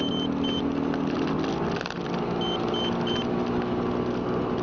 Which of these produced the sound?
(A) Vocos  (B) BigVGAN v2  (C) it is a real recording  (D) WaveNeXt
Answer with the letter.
C